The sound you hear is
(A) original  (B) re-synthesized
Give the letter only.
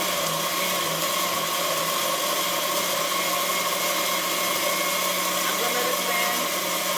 A